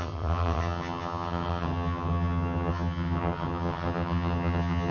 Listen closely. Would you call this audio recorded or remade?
remade